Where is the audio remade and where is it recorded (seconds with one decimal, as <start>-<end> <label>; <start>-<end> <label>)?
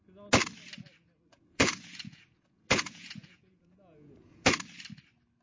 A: 0.0-1.3 recorded; 1.3-4.5 remade; 4.5-5.4 recorded